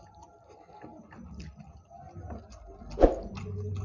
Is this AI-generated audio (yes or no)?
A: no